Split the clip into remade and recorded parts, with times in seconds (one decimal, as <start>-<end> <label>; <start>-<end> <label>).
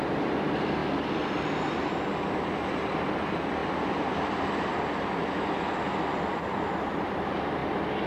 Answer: 0.0-8.1 recorded